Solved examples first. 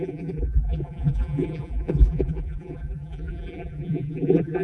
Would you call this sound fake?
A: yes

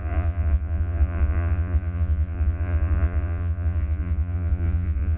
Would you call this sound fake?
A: yes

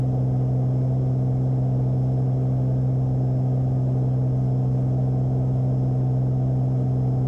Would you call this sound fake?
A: no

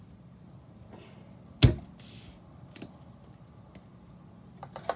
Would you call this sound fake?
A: no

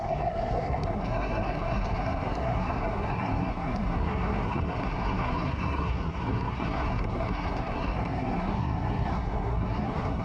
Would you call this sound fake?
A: yes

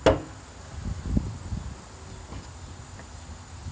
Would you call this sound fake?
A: no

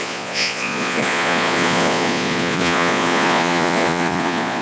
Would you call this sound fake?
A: yes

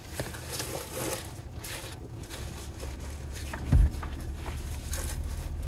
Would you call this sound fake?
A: no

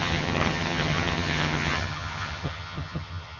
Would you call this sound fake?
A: yes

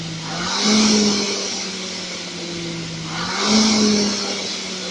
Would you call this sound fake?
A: no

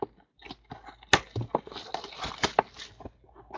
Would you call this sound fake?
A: no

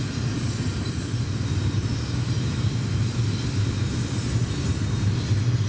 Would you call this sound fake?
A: no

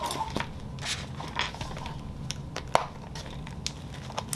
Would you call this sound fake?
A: no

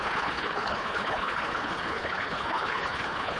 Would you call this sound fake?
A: yes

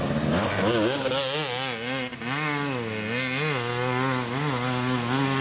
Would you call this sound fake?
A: no